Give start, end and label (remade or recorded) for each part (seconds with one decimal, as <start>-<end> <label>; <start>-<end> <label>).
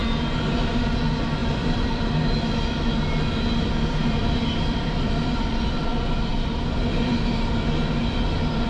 0.0-1.4 recorded; 1.4-2.2 remade; 2.2-4.0 recorded; 4.0-5.8 remade; 5.8-6.3 recorded; 6.3-6.9 remade; 6.9-8.7 recorded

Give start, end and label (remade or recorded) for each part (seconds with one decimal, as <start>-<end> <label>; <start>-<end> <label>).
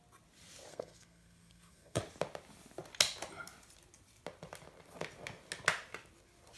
0.0-0.7 recorded; 0.7-2.0 remade; 2.0-6.6 recorded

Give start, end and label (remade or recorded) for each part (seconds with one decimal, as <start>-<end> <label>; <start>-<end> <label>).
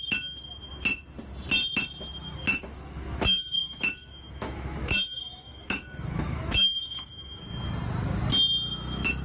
0.0-2.5 recorded; 2.5-7.4 remade; 7.4-9.2 recorded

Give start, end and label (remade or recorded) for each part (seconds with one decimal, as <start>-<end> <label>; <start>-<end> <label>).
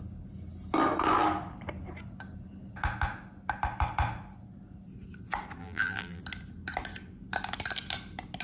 0.0-5.6 recorded; 5.6-6.2 remade; 6.2-8.4 recorded